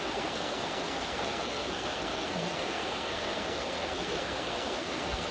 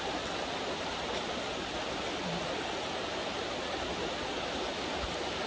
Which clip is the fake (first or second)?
first